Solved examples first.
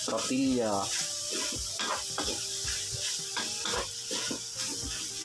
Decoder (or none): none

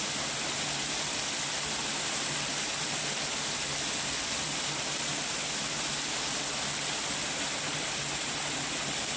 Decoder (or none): none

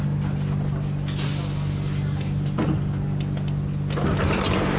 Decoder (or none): none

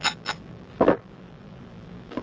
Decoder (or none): vocoder, BigVGAN v2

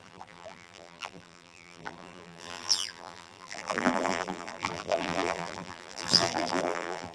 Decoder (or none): vocoder, BigVGAN v2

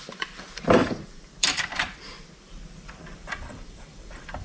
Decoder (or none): vocoder, BigVGAN v2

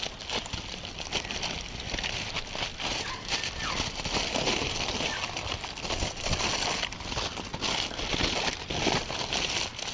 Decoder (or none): none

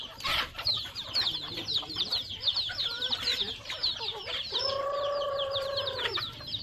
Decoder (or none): vocoder, BigVGAN v2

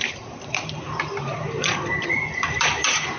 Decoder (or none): vocoder, BigVGAN v2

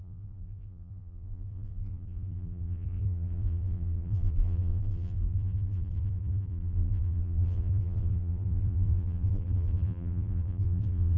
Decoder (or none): vocoder, BigVGAN v2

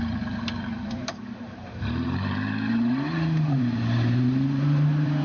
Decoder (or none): vocoder, BigVGAN v2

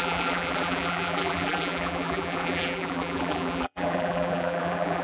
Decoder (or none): vocoder, BigVGAN v2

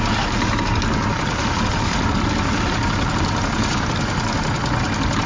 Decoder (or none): none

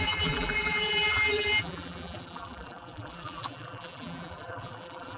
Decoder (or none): vocoder, BigVGAN v2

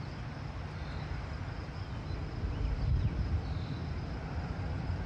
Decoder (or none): none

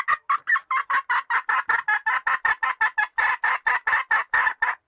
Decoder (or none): none